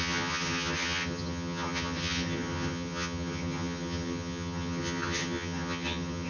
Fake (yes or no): yes